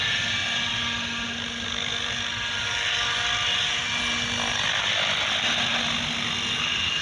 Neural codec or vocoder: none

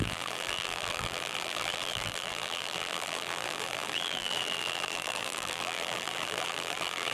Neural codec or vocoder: vocoder, BigVGAN v2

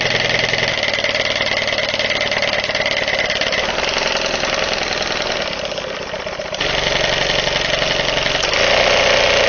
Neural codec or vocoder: none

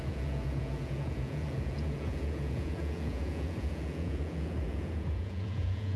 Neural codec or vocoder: vocoder, Vocos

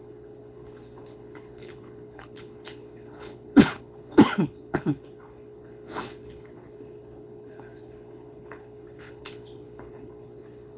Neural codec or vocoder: codec, HILCodec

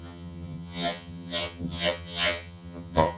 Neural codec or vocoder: vocoder, HiFi-GAN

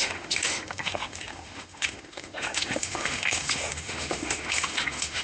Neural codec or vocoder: autoencoder, DAC-VAE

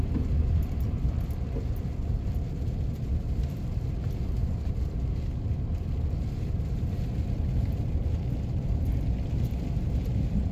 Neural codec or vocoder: none